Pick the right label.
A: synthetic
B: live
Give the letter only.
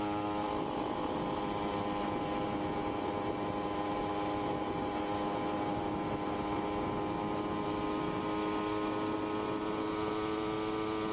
B